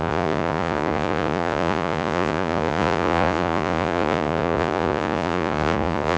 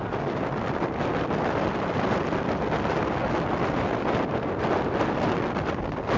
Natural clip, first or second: second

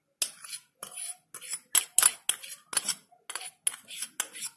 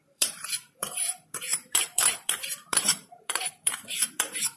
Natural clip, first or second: first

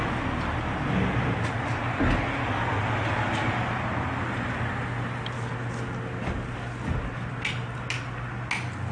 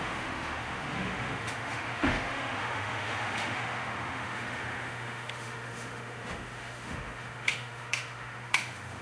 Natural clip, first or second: first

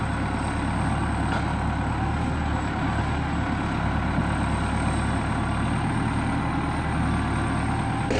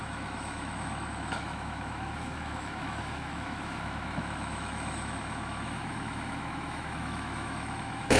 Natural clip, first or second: first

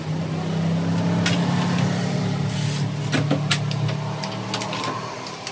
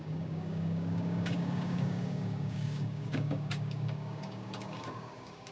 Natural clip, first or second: first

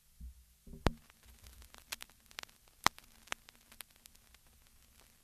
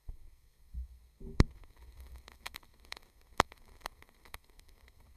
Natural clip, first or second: first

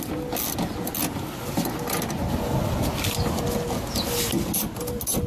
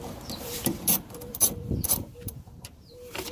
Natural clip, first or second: first